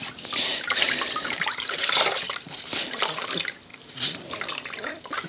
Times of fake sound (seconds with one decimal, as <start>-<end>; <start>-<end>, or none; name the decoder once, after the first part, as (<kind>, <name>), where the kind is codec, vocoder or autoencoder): 0.5-3.0 (vocoder, BigVGAN v2); 3.7-4.3